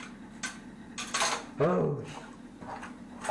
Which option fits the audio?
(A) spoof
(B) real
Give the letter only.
B